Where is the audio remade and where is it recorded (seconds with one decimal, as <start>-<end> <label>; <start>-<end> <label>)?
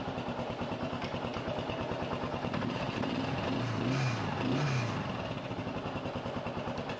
0.0-7.0 recorded